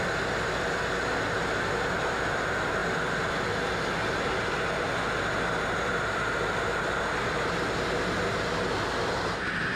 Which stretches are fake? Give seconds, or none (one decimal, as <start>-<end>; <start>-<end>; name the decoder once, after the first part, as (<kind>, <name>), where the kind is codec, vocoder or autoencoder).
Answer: none